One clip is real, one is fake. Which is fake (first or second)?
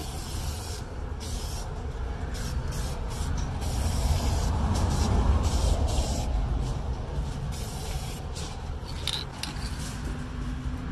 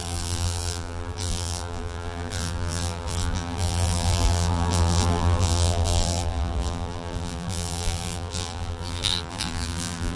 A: second